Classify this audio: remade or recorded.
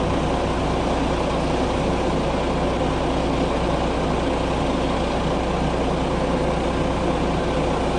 recorded